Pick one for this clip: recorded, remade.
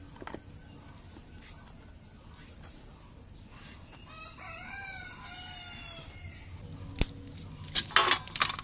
recorded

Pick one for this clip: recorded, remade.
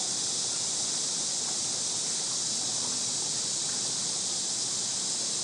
recorded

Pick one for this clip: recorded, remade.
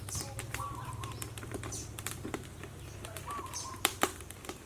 remade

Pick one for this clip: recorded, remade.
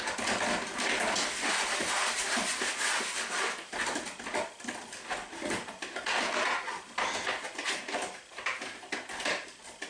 recorded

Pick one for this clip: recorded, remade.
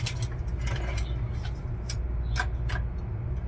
recorded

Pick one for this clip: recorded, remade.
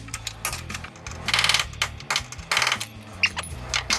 recorded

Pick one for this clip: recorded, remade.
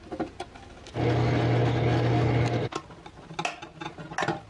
recorded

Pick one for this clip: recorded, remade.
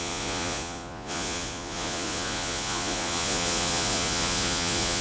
remade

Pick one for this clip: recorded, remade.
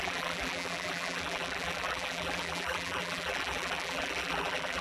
remade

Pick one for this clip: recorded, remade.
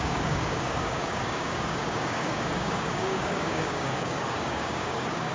remade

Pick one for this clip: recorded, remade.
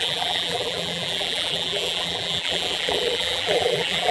remade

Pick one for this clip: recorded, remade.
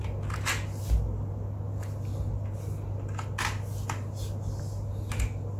recorded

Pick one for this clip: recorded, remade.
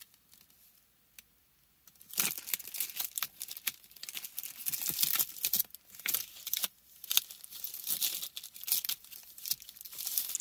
recorded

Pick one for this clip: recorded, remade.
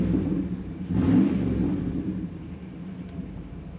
recorded